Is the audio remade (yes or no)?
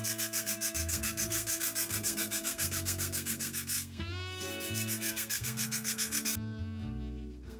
yes